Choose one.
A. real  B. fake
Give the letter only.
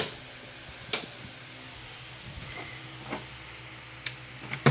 A